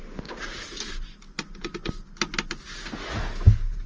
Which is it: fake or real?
real